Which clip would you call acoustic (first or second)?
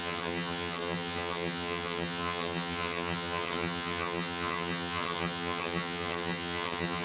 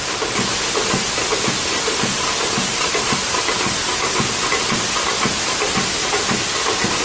second